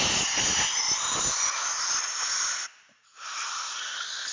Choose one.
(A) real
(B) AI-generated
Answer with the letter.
A